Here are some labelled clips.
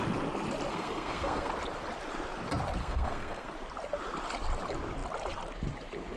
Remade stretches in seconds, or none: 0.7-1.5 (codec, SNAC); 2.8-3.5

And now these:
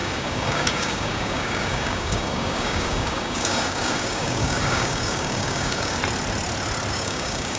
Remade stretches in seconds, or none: 0.0-6.0 (codec, DAC); 6.9-7.6

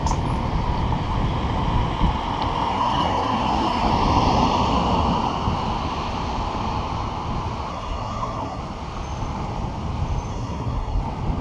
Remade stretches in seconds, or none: 2.7-3.9 (codec, SNAC); 7.7-8.6; 10.3-11.0

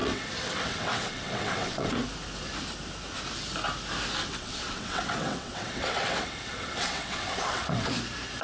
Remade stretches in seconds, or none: 0.0-1.9 (vocoder, WaveNeXt); 4.2-7.9

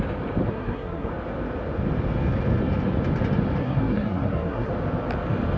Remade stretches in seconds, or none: 0.4-1.1 (codec, SNAC); 3.6-4.7

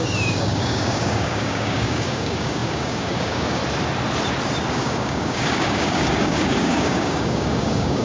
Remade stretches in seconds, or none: 0.0-3.6 (codec, DAC); 4.7-8.0

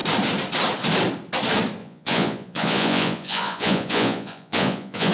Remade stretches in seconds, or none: 1.8-5.1 (vocoder, Vocos)